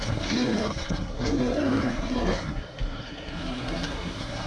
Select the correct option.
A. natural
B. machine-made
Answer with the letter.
B